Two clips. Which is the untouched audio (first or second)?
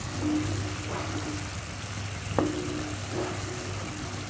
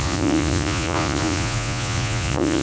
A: first